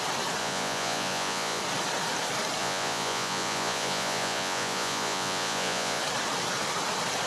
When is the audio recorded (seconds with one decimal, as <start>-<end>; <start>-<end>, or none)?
0.0-0.4; 1.6-2.6; 6.0-7.3